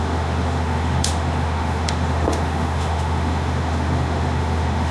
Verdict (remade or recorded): remade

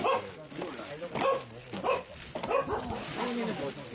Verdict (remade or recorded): recorded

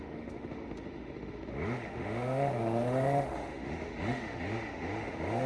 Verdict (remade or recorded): remade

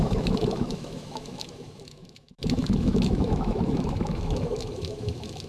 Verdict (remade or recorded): remade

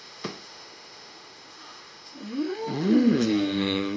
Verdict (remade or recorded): remade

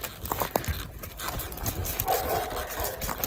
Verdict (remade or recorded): recorded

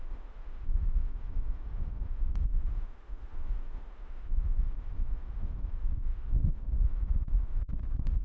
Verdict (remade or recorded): remade